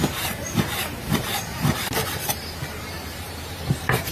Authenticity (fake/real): fake